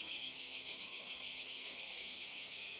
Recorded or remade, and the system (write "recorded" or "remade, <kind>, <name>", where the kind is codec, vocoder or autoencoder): remade, codec, SNAC